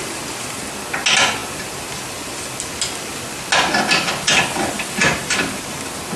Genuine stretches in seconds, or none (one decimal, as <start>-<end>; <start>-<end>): 0.0-6.2